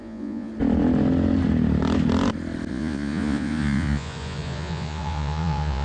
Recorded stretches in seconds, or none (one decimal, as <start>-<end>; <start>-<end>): 0.5-2.7

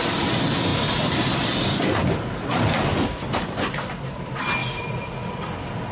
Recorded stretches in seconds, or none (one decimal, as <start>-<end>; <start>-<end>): 0.0-4.6; 5.5-5.9